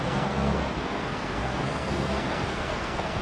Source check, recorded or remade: remade